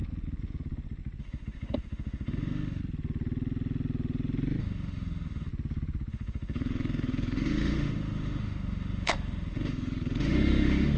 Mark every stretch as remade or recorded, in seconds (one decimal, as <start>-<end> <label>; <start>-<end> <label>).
0.0-1.2 recorded; 1.2-2.8 remade; 2.8-4.6 recorded; 4.6-5.5 remade; 5.5-6.1 recorded; 6.1-11.0 remade